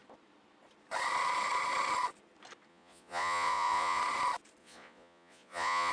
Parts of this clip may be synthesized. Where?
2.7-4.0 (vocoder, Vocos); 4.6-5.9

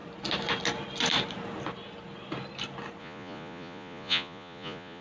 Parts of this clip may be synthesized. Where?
3.0-5.0 (vocoder, Vocos)

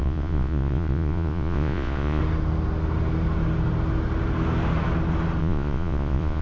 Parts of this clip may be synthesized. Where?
0.0-2.2 (vocoder, Vocos); 5.4-6.4

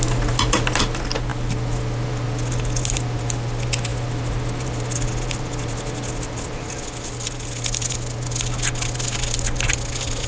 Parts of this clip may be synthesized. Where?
none